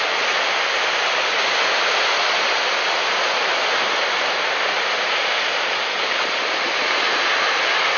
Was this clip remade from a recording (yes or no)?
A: no